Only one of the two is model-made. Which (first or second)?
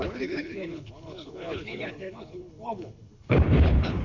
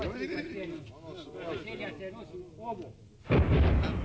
first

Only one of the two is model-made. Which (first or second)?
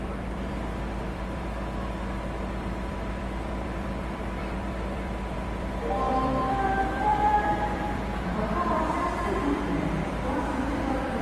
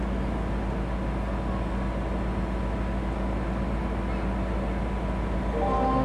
first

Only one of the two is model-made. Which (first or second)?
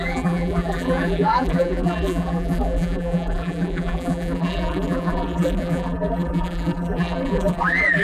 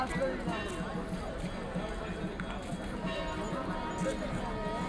first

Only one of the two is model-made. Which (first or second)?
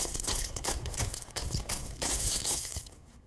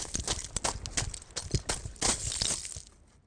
first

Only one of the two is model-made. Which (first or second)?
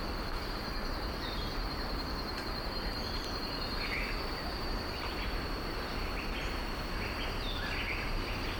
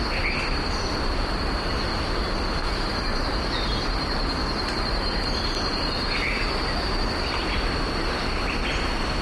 first